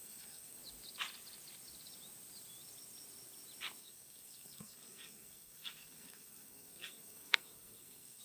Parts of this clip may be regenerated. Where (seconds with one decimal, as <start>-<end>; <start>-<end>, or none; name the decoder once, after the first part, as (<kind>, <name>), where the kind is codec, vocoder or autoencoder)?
0.0-0.6 (codec, SNAC); 3.8-8.2